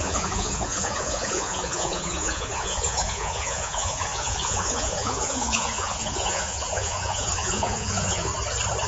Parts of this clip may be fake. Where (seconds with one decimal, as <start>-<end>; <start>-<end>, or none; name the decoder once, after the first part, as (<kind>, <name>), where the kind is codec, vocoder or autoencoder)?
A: 0.0-8.3 (vocoder, Vocos)